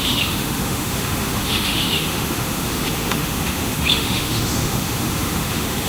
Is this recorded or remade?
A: remade